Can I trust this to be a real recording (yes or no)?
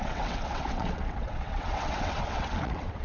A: no